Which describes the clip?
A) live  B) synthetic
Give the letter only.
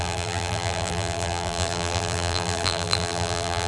B